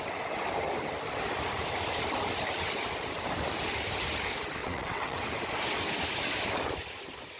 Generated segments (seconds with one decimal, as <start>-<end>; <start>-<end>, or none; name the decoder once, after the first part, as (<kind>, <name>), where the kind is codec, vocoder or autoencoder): 4.6-5.2 (vocoder, WaveNeXt)